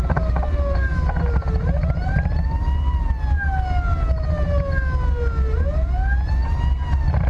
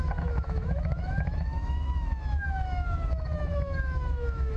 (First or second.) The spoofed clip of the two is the second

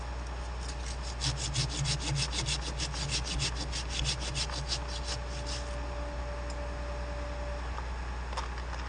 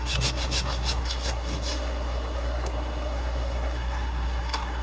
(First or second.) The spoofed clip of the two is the second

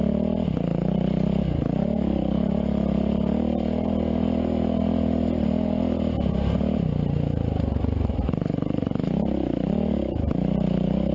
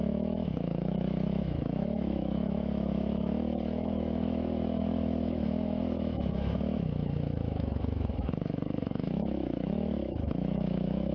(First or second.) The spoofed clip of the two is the second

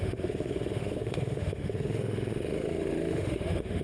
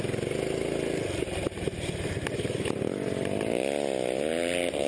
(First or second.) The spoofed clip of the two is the first